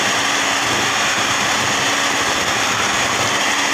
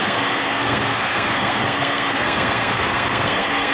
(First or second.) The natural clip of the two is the first